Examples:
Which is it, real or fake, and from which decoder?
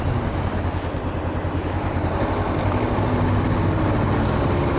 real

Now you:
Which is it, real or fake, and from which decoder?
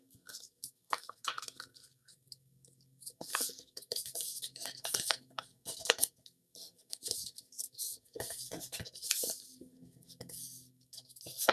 fake, codec, SNAC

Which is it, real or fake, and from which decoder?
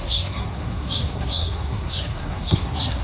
fake, codec, SNAC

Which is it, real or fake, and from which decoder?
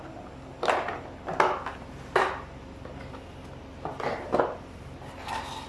real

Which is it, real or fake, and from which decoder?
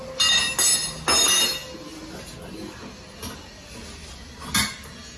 real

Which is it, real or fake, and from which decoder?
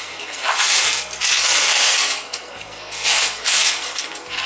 fake, codec, SNAC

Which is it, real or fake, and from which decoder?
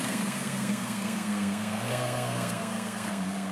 fake, codec, SNAC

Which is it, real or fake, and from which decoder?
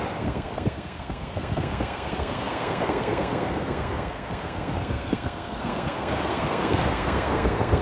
fake, codec, SNAC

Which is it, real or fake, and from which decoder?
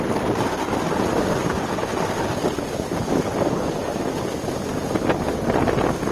real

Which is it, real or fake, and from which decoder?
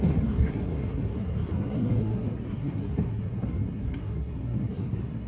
fake, codec, SNAC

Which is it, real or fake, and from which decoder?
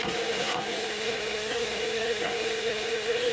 fake, codec, SNAC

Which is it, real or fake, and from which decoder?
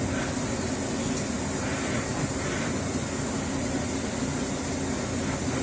real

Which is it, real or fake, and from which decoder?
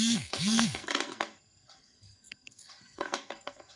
fake, codec, SNAC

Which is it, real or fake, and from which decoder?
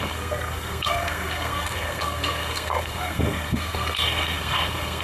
fake, codec, SNAC